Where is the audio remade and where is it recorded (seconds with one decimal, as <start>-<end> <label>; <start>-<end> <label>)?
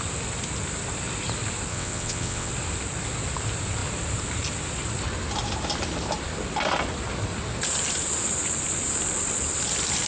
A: 0.0-1.7 recorded; 1.7-2.5 remade; 2.5-10.1 recorded